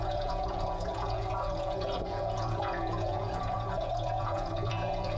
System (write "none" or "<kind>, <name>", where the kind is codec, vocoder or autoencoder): vocoder, Vocos